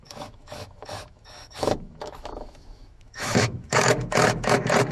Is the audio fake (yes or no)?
yes